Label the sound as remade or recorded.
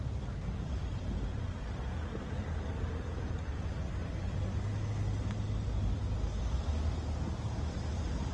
recorded